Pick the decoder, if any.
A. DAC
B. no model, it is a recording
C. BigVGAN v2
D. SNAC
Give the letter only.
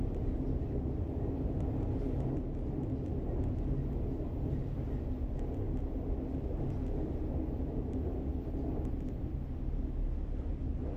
B